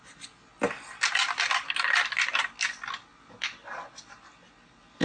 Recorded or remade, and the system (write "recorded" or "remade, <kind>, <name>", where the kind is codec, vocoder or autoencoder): recorded